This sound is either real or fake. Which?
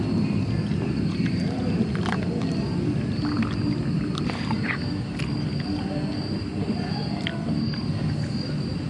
real